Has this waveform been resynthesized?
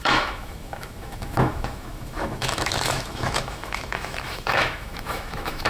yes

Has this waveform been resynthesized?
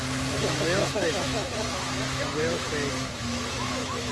yes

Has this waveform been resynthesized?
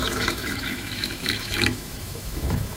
yes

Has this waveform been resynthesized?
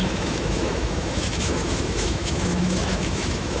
yes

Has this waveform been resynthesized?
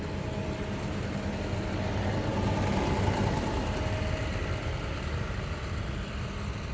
no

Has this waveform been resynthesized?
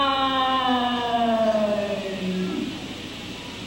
no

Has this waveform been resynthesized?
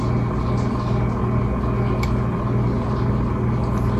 no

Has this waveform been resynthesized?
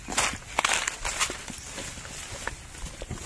no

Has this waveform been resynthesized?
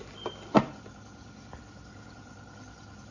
no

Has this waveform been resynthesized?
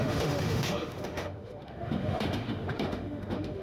yes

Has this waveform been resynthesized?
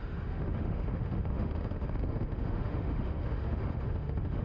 yes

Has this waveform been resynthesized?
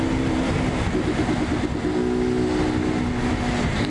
no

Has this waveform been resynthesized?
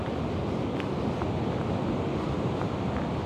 no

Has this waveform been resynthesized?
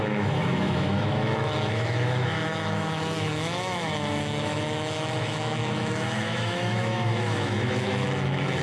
yes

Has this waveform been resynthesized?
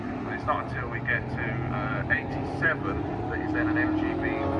no